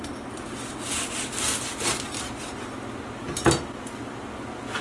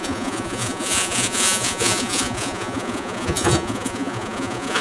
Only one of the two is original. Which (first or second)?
first